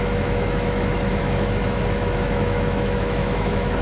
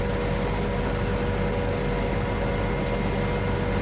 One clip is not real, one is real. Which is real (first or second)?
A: second